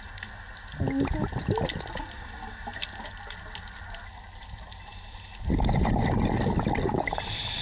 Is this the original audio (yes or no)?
yes